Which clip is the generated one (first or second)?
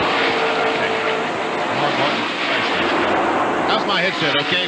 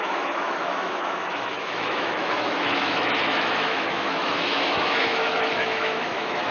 second